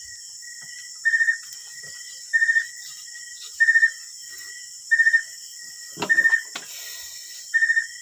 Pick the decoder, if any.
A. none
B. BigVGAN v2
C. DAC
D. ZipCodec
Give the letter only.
A